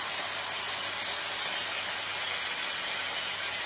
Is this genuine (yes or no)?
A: yes